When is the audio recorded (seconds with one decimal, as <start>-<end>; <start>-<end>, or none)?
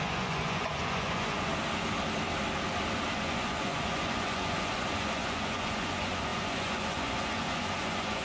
1.5-3.1